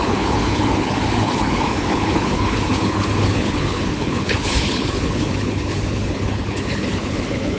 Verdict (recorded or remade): remade